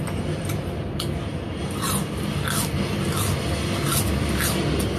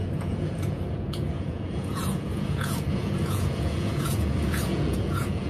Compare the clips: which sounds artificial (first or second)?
second